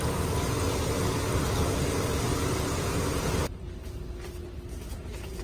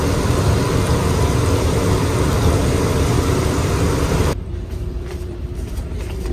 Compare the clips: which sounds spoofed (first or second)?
second